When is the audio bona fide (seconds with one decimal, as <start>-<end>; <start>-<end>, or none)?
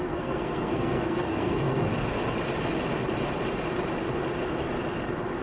1.9-5.4